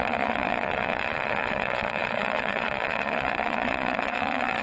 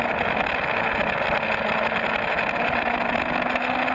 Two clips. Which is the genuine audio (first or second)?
second